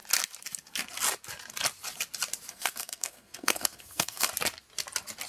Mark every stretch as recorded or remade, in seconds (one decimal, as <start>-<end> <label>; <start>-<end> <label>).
0.0-2.5 recorded; 2.5-4.3 remade; 4.3-5.3 recorded

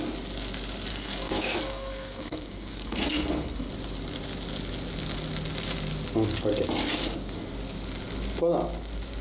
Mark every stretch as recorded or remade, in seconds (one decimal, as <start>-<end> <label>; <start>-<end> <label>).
0.0-0.9 recorded; 0.9-3.7 remade; 3.7-9.2 recorded

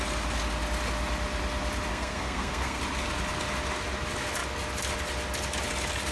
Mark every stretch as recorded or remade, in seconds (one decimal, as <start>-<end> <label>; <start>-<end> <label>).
0.0-1.9 recorded; 1.9-2.8 remade; 2.8-6.1 recorded

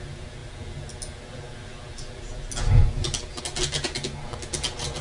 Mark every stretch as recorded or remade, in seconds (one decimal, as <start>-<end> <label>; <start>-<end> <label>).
0.0-5.0 recorded

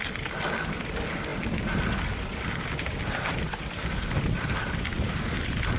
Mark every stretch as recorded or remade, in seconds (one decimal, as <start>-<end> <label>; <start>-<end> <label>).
0.0-5.8 recorded

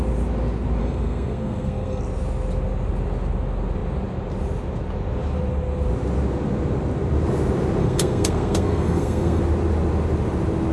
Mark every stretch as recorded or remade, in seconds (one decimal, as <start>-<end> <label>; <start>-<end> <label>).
0.0-0.8 recorded; 0.8-2.0 remade; 2.0-7.8 recorded; 7.8-9.4 remade; 9.4-10.7 recorded

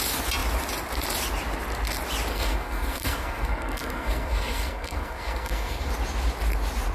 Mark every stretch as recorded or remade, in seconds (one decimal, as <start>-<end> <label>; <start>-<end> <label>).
0.0-2.3 recorded; 2.3-5.9 remade; 5.9-6.9 recorded

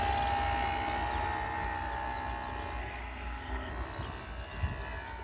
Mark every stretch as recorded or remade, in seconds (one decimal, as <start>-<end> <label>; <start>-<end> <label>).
0.0-2.8 recorded; 2.8-3.7 remade; 3.7-5.2 recorded